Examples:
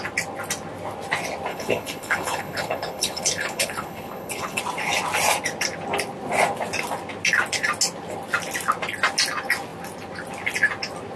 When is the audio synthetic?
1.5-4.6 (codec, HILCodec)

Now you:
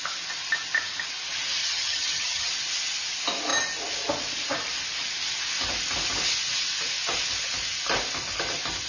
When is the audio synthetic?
1.6-2.5 (vocoder, HiFi-GAN)